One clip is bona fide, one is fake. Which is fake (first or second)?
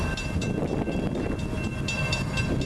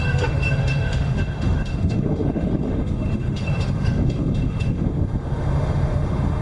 second